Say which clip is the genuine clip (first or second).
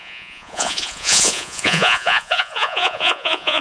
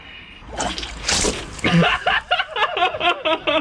second